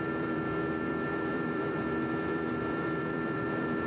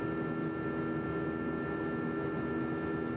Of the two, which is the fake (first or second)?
first